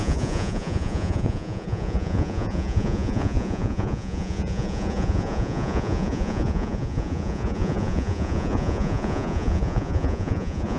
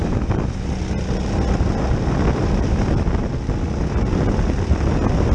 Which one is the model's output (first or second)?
first